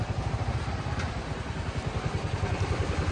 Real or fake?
real